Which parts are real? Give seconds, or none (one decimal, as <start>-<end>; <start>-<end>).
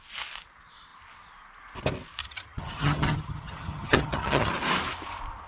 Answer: 0.0-2.2; 4.5-5.5